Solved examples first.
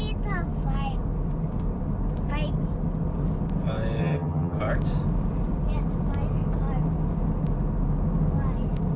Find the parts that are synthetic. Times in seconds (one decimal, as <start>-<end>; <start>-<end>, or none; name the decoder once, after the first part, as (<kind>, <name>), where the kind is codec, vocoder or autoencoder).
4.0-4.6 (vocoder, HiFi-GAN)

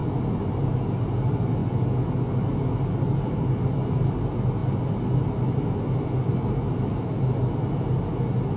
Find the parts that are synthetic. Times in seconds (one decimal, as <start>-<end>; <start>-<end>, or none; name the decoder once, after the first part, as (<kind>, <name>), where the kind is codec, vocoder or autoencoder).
none

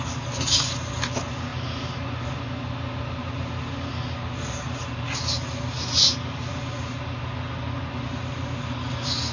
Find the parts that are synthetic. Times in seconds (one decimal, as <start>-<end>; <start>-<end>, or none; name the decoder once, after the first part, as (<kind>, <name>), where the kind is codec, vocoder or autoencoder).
none

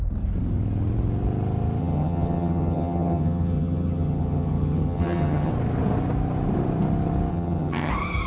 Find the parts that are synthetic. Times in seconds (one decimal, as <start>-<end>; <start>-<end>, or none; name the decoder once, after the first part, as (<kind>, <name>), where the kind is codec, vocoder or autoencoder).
1.8-5.5 (vocoder, HiFi-GAN); 7.3-7.9